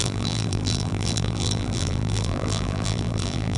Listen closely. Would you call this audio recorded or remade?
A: remade